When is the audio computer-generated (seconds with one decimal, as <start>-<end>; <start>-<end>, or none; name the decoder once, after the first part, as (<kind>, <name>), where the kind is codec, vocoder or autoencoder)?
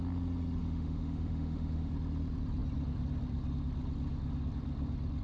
0.6-1.9 (autoencoder, DAC-VAE)